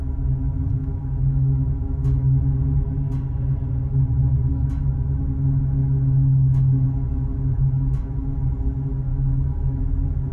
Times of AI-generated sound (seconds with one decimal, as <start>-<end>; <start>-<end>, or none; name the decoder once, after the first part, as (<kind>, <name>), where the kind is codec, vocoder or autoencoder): 0.8-2.4 (autoencoder, DAC-VAE); 4.5-5.2; 5.8-8.3; 9.1-9.8